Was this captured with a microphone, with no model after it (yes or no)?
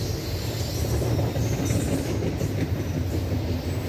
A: yes